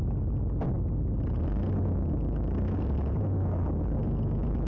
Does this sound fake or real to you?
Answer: real